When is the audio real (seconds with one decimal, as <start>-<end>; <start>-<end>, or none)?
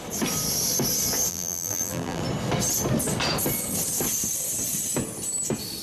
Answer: 0.0-1.3; 2.2-5.8